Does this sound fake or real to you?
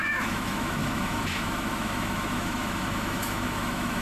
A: fake